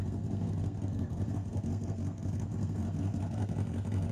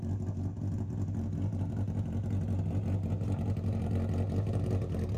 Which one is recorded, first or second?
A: second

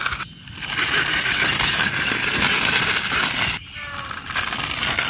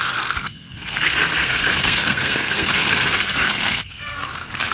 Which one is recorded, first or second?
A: first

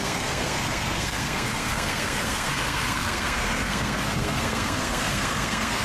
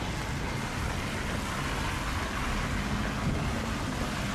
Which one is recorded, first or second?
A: second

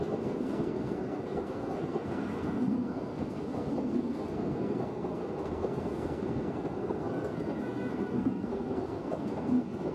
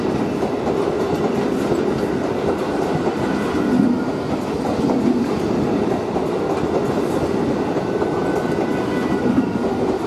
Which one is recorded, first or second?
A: second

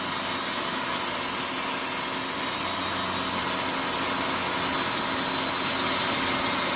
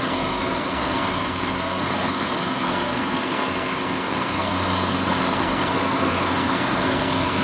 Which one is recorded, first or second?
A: first